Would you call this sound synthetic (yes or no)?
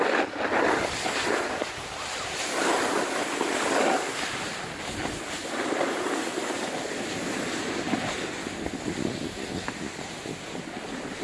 no